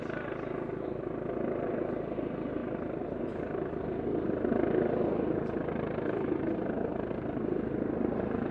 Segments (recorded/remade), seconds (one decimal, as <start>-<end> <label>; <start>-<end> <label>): 0.0-8.5 recorded

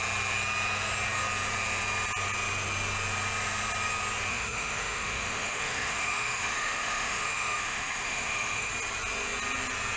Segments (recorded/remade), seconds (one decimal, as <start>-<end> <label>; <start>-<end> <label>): 0.0-4.3 recorded; 4.3-8.7 remade; 8.7-10.0 recorded

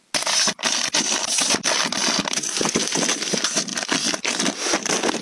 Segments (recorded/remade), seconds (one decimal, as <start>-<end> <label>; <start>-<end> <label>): 0.0-5.2 recorded

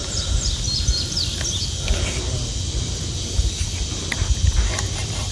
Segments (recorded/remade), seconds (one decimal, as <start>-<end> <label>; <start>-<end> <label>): 0.0-5.3 recorded

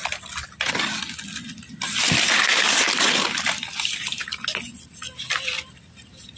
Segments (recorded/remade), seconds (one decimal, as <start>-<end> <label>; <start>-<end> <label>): 0.0-6.4 recorded

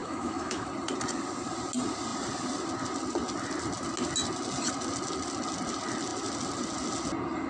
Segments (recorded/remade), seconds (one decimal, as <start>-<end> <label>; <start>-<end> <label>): 0.0-0.7 remade; 0.7-7.5 recorded

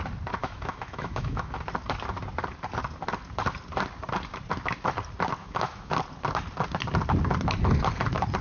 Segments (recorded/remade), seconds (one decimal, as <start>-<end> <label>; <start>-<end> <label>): 0.0-0.4 recorded; 0.4-1.5 remade; 1.5-5.4 recorded; 5.4-5.9 remade; 5.9-8.4 recorded